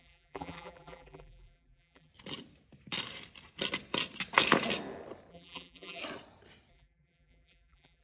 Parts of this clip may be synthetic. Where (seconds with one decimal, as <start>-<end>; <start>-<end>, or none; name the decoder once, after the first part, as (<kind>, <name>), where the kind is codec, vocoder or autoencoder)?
0.0-2.1 (vocoder, BigVGAN v2); 5.3-6.0; 6.7-8.0